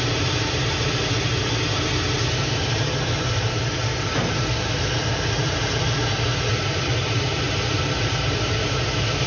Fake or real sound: fake